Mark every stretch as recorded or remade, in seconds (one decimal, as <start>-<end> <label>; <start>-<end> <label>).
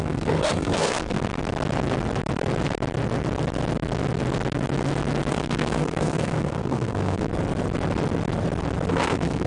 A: 0.0-1.3 remade; 1.3-5.3 recorded; 5.3-7.3 remade; 7.3-8.9 recorded; 8.9-9.5 remade